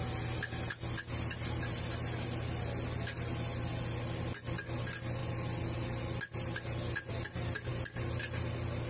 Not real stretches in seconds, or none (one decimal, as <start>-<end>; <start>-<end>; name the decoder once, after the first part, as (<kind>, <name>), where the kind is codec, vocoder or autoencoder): none